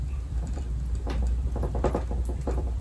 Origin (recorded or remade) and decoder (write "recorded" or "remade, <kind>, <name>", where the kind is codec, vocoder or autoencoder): remade, vocoder, BigVGAN v2